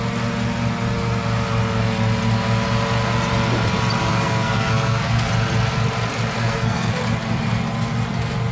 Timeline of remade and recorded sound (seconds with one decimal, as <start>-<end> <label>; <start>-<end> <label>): 0.0-4.1 recorded; 4.1-5.3 remade; 5.3-6.4 recorded; 6.4-6.9 remade; 6.9-8.5 recorded